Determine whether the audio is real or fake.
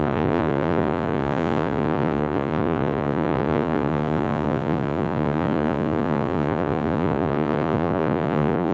fake